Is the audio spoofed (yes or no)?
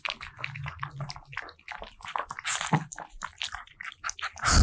no